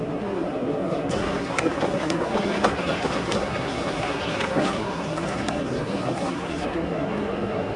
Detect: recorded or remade remade